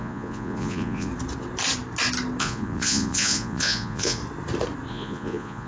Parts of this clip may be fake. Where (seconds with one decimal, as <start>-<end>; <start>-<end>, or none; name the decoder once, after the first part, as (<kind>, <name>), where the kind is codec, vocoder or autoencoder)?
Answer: 0.0-1.1 (vocoder, Vocos); 2.4-4.2; 4.9-5.7